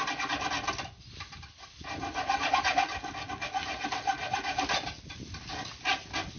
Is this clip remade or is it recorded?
recorded